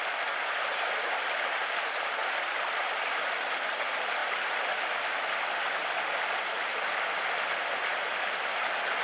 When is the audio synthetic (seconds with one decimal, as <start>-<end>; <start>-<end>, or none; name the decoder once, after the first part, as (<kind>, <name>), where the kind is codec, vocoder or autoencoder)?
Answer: none

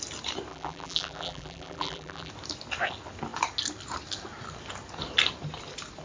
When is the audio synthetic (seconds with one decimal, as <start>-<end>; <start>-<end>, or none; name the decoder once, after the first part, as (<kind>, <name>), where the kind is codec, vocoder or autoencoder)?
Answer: 0.5-2.3 (vocoder, BigVGAN v2)

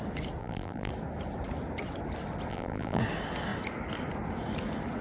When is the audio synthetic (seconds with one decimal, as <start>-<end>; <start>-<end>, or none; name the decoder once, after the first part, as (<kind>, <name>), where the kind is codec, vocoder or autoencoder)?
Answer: 0.4-0.9 (vocoder, BigVGAN v2); 2.5-3.0

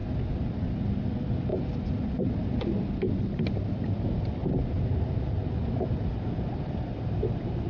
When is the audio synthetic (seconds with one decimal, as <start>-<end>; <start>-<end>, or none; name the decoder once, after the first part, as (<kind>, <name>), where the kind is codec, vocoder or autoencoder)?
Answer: 0.0-0.7 (vocoder, BigVGAN v2); 1.5-4.0

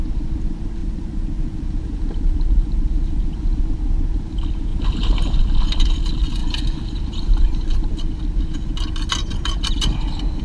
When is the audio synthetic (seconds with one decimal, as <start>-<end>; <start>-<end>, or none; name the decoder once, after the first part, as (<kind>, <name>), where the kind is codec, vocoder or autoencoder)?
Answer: 0.8-3.6 (vocoder, BigVGAN v2); 4.7-5.4; 6.4-8.0

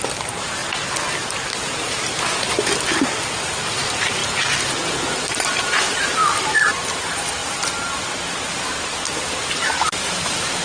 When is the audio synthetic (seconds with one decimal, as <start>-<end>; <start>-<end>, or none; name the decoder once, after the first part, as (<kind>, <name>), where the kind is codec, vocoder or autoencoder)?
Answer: 0.0-0.6 (vocoder, BigVGAN v2); 1.3-4.2; 5.6-6.2; 7.0-7.4; 9.4-10.6